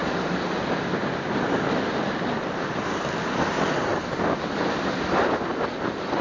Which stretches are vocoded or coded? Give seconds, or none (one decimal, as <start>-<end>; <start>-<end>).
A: none